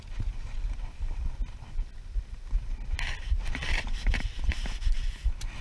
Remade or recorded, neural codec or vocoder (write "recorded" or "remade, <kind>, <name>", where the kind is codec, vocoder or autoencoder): remade, vocoder, BigVGAN v2